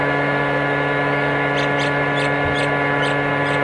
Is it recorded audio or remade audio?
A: recorded